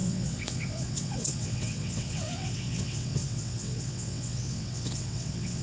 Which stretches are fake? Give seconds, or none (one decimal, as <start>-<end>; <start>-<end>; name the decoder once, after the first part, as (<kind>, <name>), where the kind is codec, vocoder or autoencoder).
0.0-5.6 (vocoder, WaveNeXt)